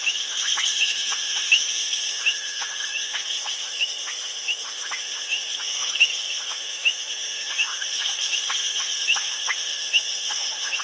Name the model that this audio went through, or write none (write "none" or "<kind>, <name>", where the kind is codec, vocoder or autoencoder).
autoencoder, DAC-VAE